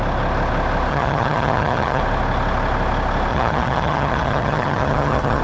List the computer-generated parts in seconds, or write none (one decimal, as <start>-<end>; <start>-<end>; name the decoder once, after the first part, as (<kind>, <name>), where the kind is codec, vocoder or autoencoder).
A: 0.9-2.0 (vocoder, HiFi-GAN); 3.3-5.4

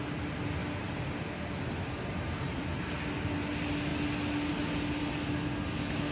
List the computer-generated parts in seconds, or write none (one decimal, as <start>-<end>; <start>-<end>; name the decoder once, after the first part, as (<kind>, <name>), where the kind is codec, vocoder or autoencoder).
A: none